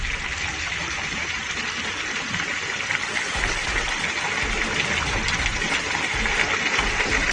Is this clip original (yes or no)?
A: yes